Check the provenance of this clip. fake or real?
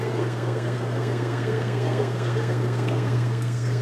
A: fake